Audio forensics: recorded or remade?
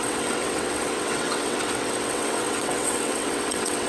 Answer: remade